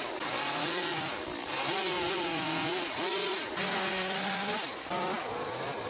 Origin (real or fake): real